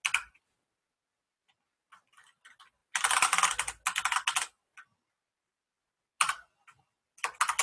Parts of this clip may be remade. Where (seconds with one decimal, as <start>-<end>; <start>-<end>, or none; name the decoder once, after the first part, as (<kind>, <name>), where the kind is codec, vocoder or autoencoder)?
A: none